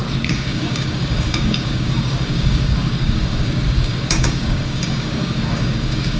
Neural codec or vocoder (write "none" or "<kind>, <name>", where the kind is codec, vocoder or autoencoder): codec, DAC